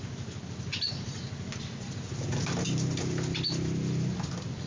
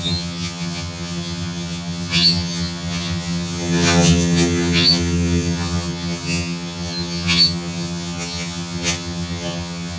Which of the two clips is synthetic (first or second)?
second